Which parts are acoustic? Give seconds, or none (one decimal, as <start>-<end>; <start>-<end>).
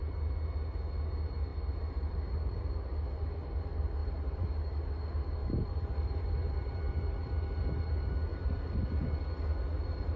0.0-4.0; 4.5-5.4; 7.9-8.3; 8.8-10.2